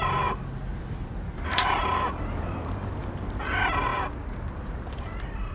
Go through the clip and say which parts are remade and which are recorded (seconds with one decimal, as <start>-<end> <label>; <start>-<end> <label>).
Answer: 0.0-0.7 recorded; 0.7-3.0 remade; 3.0-5.5 recorded